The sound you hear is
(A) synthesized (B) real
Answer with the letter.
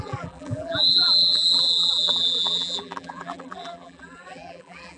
A